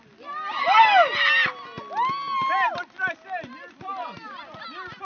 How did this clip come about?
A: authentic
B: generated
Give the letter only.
A